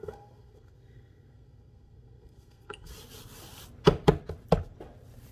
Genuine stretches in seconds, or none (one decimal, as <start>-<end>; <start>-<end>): 2.9-5.3